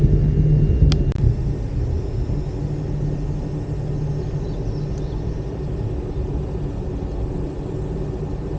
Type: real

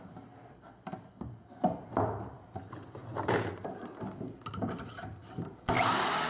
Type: real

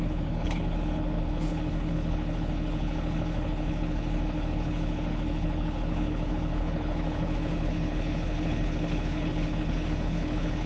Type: fake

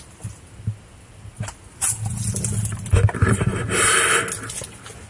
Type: real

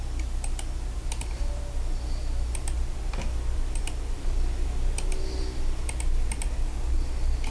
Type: real